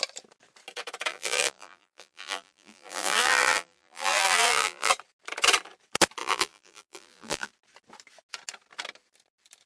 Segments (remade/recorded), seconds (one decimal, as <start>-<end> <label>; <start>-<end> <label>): 0.0-1.1 recorded; 1.1-4.9 remade; 4.9-6.2 recorded; 6.2-7.5 remade; 7.5-9.7 recorded